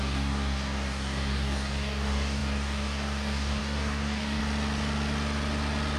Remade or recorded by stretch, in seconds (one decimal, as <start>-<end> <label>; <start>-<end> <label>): 0.0-4.4 remade; 4.4-6.0 recorded